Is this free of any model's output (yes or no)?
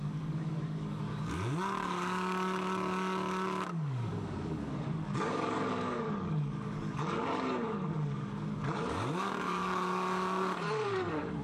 no